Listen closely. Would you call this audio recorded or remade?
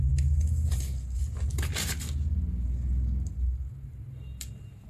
recorded